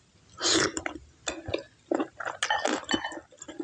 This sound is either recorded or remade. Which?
recorded